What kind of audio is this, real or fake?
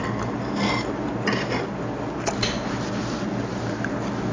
real